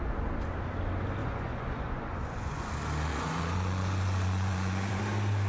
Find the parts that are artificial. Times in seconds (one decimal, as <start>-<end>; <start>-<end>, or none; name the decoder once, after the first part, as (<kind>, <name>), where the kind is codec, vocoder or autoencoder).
1.2-2.7 (vocoder, Vocos); 3.1-5.0